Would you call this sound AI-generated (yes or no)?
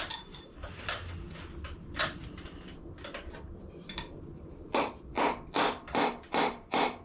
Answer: yes